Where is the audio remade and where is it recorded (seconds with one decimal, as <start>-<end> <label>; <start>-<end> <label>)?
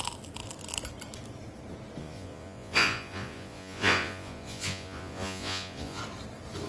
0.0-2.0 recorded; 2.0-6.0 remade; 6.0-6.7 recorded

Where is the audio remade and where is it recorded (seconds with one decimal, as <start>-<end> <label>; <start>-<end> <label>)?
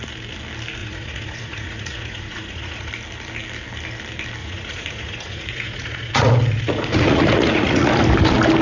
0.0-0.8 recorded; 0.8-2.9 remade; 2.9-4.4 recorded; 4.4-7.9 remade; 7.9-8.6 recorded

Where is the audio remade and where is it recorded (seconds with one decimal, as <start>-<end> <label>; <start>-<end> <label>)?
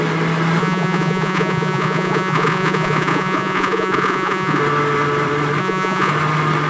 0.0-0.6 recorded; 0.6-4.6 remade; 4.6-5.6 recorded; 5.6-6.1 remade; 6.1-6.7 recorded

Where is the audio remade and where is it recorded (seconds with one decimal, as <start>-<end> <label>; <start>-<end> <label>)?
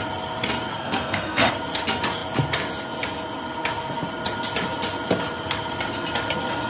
0.0-0.7 recorded; 0.7-1.5 remade; 1.5-6.7 recorded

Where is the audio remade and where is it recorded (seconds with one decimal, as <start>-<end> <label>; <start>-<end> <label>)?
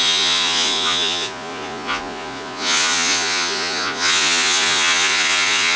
0.0-5.8 remade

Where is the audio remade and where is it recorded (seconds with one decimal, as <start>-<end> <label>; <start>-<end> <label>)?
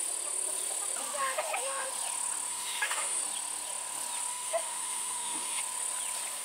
0.0-1.2 recorded; 1.2-1.9 remade; 1.9-2.5 recorded; 2.5-3.2 remade; 3.2-4.3 recorded; 4.3-5.6 remade; 5.6-6.4 recorded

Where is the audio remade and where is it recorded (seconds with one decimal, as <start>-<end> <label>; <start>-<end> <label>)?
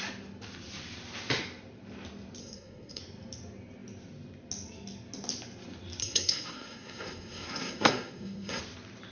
0.0-2.4 recorded; 2.4-3.0 remade; 3.0-6.0 recorded; 6.0-8.6 remade; 8.6-9.1 recorded